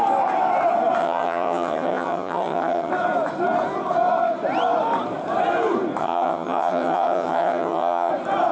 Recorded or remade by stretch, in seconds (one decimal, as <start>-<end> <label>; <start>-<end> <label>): 0.0-1.0 recorded; 1.0-2.9 remade; 2.9-6.0 recorded; 6.0-8.1 remade; 8.1-8.5 recorded